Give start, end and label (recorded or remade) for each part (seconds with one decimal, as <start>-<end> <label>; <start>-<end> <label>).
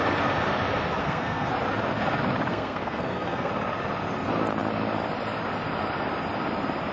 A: 0.0-1.0 recorded; 1.0-1.5 remade; 1.5-2.5 recorded; 2.5-3.5 remade; 3.5-6.9 recorded